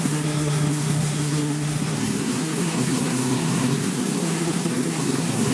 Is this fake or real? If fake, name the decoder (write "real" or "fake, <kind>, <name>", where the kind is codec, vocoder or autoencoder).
fake, codec, SNAC